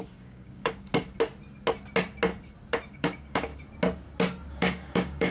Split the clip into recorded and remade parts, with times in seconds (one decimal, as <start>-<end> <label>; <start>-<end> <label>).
0.0-0.9 remade; 0.9-2.9 recorded; 2.9-3.5 remade; 3.5-4.5 recorded; 4.5-5.3 remade